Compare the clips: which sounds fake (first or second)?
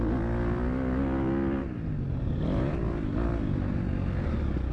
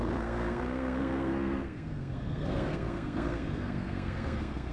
second